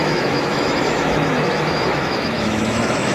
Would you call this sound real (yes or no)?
no